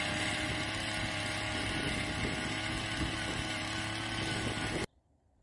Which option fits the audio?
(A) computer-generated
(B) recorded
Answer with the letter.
B